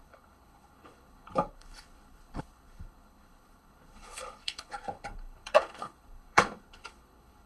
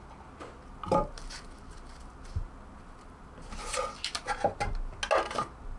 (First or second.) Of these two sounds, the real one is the second